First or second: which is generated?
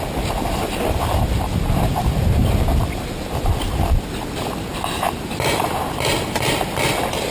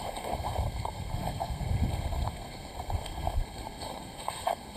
second